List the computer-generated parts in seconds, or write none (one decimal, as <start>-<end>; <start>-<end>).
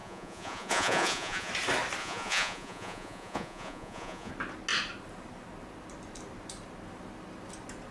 0.0-1.5; 2.0-4.3